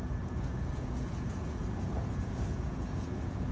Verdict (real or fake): fake